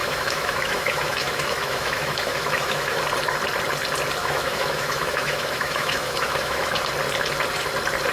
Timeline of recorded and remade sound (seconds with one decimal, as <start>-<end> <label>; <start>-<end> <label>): 0.0-3.0 remade; 3.0-4.2 recorded; 4.2-6.9 remade; 6.9-8.1 recorded